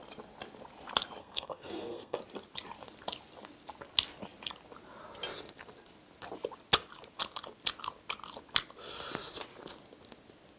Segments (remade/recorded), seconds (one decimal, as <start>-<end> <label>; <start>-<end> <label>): 0.0-1.2 recorded; 1.2-2.2 remade; 2.2-10.6 recorded